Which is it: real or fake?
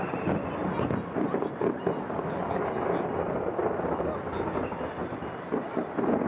real